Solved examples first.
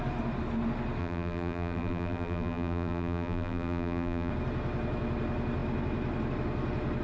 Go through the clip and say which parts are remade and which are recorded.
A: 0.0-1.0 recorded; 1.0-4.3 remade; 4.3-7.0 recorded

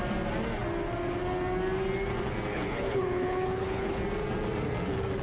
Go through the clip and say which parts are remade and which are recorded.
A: 0.0-2.5 recorded; 2.5-4.0 remade; 4.0-5.2 recorded

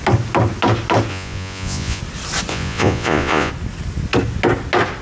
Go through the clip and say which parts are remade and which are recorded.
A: 0.0-1.1 recorded; 1.1-2.0 remade; 2.0-2.5 recorded; 2.5-3.5 remade; 3.5-5.0 recorded

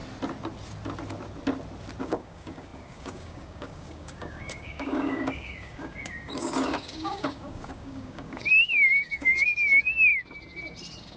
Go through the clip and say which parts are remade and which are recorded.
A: 0.0-2.0 recorded; 2.0-10.1 remade; 10.1-11.2 recorded